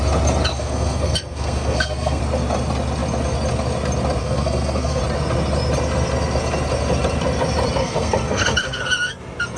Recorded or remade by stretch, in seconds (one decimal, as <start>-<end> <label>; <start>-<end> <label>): 0.0-0.5 recorded; 0.5-2.2 remade; 2.2-4.2 recorded; 4.2-5.0 remade; 5.0-7.8 recorded; 7.8-8.8 remade; 8.8-9.6 recorded